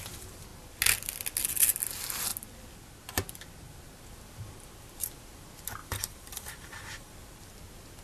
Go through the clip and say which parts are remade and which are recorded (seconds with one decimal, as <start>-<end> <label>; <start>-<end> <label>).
0.0-5.8 recorded; 5.8-7.1 remade; 7.1-8.0 recorded